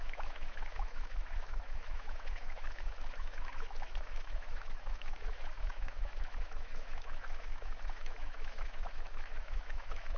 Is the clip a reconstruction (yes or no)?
yes